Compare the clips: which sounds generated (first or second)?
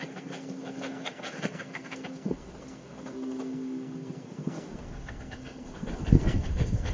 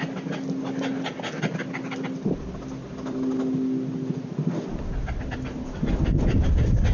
first